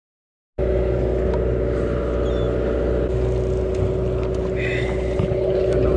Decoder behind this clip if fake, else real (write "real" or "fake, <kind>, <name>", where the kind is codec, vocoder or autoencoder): real